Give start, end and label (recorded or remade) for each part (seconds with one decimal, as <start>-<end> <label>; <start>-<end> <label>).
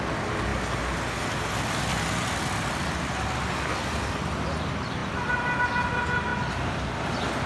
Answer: 0.0-7.5 recorded